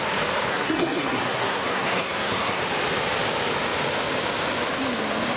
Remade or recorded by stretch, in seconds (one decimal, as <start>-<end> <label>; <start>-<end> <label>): 0.0-0.5 recorded; 0.5-2.6 remade; 2.6-5.4 recorded